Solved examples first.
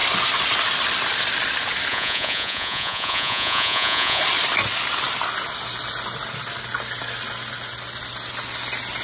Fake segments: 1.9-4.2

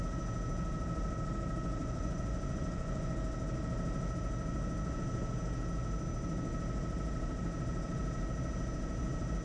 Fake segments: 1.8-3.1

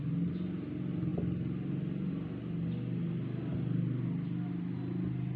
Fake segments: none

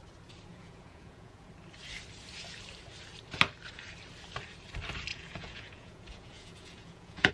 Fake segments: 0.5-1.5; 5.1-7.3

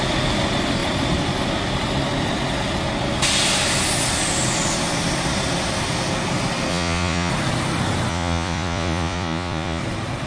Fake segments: 6.7-7.3; 8.1-9.8